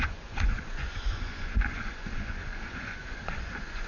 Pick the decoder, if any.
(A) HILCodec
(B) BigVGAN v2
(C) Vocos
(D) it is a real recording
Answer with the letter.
C